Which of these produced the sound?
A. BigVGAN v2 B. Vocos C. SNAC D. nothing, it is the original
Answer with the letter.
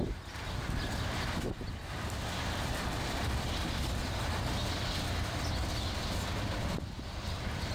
D